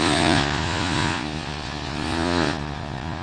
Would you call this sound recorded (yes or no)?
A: no